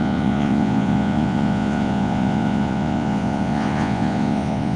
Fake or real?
fake